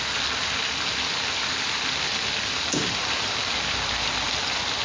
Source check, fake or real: real